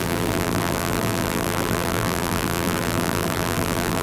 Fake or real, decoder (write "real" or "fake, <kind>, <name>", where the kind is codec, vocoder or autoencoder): fake, vocoder, BigVGAN v2